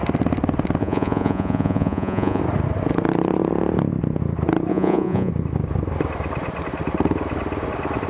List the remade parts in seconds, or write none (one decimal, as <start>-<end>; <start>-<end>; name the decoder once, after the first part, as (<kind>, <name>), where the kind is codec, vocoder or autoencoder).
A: 0.8-2.4 (vocoder, Vocos); 4.7-5.3